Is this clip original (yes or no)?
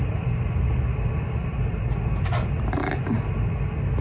yes